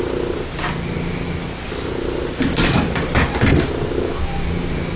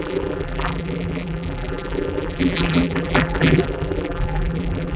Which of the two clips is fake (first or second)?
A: second